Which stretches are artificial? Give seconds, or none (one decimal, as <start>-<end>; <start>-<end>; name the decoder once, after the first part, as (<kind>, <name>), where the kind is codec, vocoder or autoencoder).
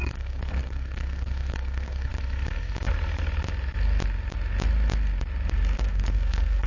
0.0-2.1 (codec, SNAC); 5.8-6.7